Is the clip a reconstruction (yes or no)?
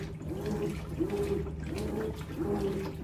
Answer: no